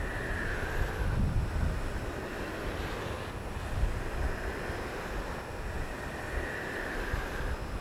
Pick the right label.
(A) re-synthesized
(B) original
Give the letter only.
B